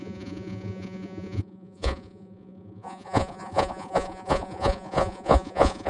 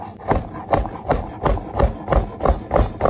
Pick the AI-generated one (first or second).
first